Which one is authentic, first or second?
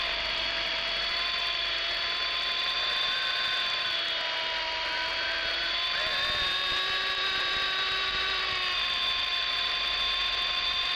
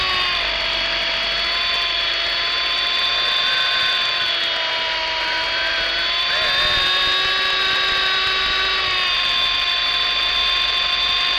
second